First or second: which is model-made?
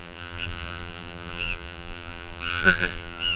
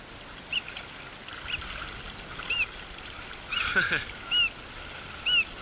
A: first